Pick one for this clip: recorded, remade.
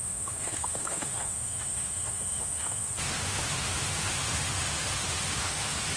remade